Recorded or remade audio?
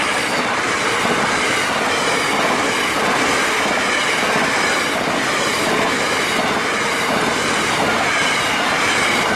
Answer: remade